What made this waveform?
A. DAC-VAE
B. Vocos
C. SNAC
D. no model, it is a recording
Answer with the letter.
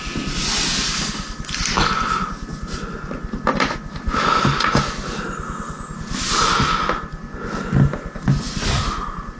D